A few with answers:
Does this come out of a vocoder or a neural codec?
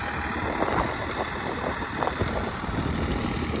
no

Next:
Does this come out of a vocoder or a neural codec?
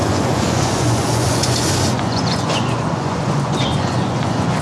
yes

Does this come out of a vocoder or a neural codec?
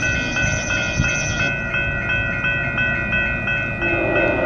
no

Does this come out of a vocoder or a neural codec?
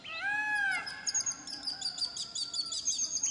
no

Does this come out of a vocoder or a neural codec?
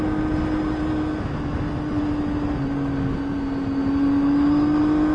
no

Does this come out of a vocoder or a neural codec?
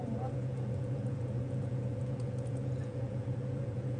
yes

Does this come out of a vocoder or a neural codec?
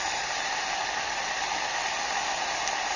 no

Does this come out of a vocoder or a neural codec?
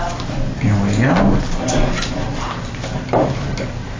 no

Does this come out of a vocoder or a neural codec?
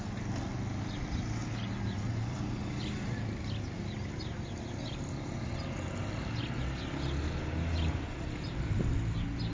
no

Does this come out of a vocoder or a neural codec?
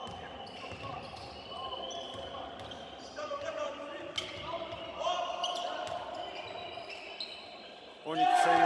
no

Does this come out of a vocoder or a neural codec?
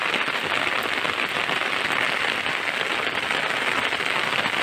yes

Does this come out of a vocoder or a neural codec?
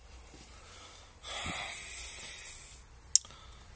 no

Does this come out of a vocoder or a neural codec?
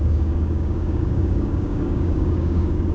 yes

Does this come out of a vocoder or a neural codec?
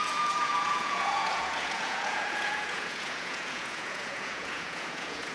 yes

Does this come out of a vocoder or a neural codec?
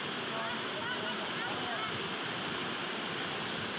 no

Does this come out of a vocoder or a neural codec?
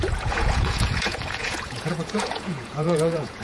yes